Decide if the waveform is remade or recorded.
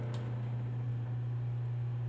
recorded